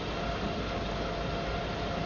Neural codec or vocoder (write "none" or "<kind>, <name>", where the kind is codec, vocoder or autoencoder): none